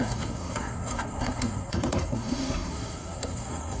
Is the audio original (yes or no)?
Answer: no